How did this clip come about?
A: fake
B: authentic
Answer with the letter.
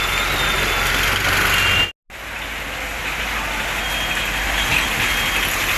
B